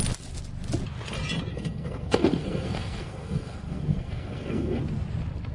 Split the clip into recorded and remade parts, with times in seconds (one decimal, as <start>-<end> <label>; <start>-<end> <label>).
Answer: 0.0-1.5 recorded; 1.5-4.8 remade; 4.8-5.5 recorded